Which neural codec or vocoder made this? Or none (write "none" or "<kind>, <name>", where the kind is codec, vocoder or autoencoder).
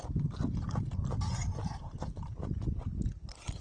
none